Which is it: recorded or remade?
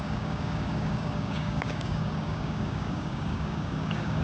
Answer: remade